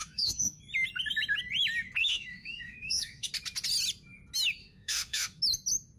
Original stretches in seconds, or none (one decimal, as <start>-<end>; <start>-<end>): 0.6-2.0; 3.3-4.6; 5.4-6.0